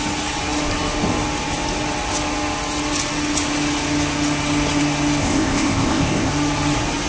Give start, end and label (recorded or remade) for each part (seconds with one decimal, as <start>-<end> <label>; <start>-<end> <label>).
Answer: 0.0-5.2 recorded; 5.2-6.3 remade; 6.3-7.1 recorded